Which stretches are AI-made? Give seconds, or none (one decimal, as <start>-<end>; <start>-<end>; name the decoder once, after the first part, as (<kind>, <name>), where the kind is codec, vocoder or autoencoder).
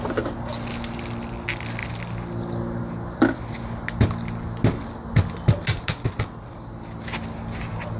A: none